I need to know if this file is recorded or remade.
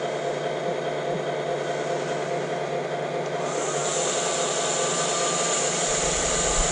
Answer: recorded